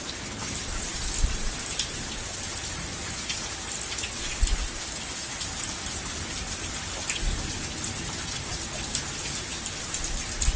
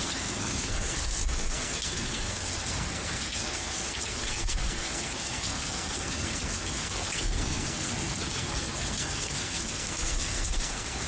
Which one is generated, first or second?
second